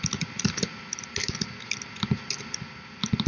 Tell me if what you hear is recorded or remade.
recorded